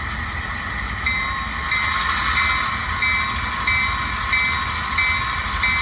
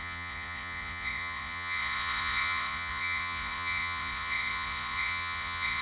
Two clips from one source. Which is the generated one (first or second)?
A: second